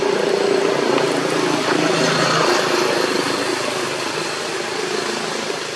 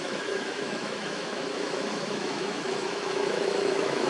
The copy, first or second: second